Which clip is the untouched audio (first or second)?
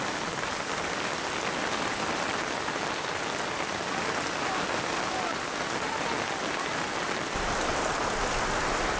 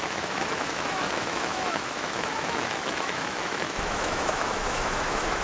first